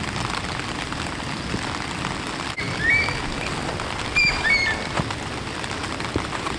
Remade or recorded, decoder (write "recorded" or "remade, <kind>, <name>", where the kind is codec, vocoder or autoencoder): recorded